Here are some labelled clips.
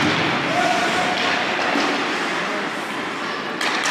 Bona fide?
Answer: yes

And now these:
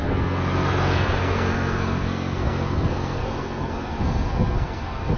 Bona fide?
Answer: no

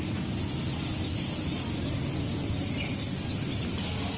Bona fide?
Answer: yes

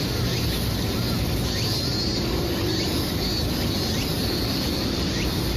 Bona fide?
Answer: yes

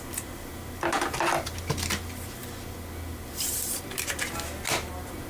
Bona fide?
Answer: yes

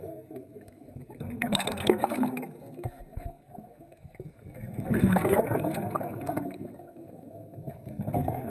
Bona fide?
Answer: no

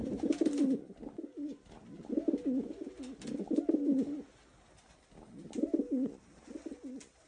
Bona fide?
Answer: yes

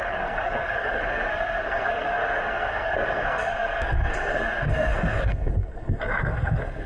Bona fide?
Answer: no